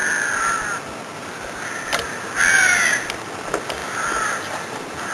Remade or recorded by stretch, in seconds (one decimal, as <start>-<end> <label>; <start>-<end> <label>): 0.0-5.1 recorded